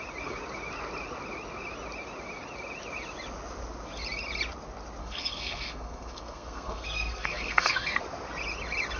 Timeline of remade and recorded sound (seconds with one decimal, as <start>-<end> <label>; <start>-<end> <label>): 0.0-5.0 recorded; 5.0-8.0 remade; 8.0-9.0 recorded